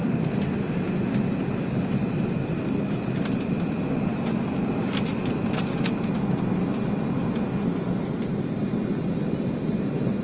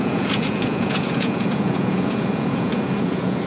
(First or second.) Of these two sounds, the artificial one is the second